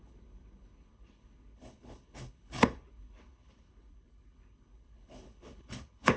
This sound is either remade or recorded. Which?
remade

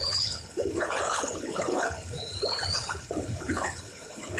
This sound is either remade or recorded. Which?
remade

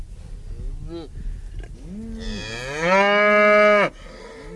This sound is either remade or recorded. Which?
recorded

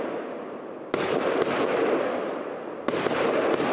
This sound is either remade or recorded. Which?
recorded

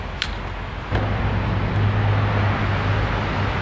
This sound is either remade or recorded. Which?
recorded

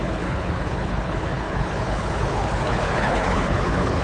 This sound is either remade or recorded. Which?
remade